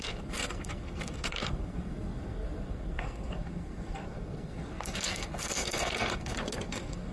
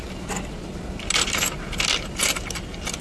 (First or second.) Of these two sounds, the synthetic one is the first